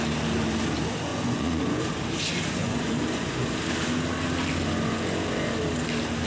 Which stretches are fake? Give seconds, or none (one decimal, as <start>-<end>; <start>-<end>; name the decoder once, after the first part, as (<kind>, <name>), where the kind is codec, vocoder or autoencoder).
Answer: 1.1-1.8 (vocoder, Vocos); 2.6-3.5